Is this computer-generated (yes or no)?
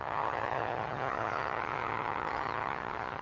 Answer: yes